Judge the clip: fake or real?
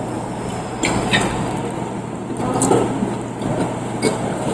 real